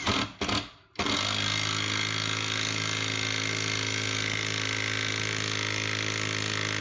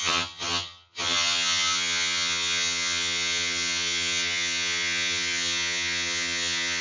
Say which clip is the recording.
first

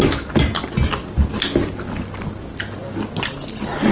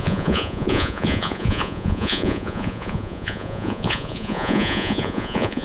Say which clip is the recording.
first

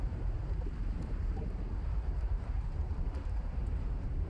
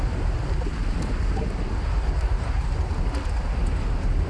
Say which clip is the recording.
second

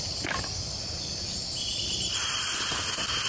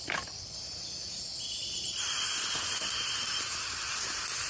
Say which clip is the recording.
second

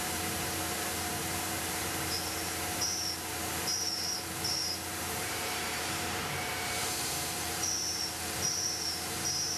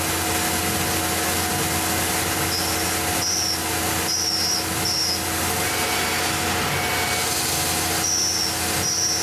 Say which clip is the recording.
second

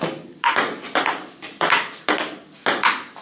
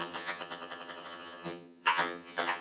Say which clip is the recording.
first